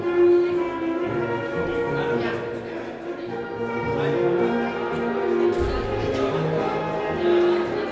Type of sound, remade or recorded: recorded